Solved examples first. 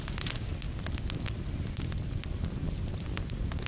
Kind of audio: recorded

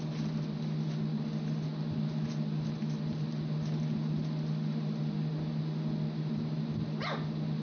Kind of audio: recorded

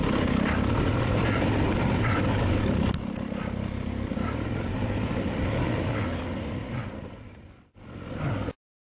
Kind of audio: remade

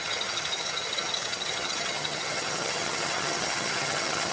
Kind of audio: remade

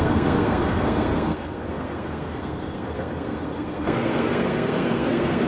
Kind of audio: remade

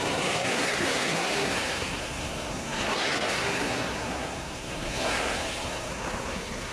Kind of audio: remade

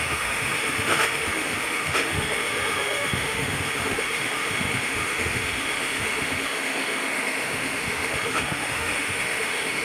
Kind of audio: remade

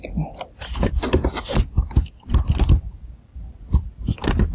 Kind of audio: recorded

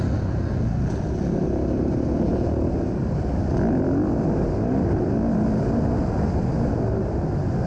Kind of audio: recorded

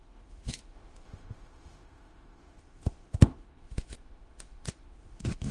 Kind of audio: remade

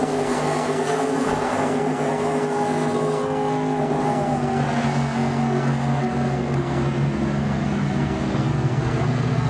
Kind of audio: remade